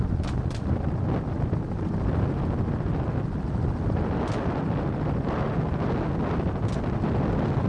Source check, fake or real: real